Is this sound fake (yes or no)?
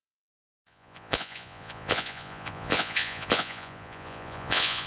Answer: yes